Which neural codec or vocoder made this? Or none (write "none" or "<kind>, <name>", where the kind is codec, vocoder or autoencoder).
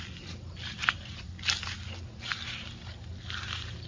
none